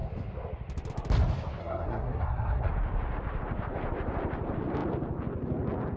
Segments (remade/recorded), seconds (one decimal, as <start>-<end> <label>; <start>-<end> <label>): 0.0-1.6 recorded; 1.6-2.7 remade; 2.7-6.0 recorded